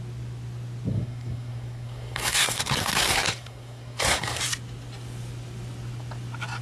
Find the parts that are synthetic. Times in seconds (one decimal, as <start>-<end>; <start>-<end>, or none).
0.9-4.4